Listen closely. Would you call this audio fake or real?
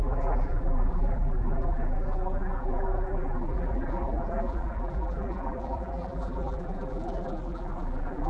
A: fake